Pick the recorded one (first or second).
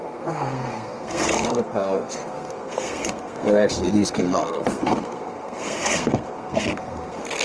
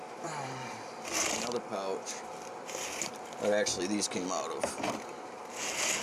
second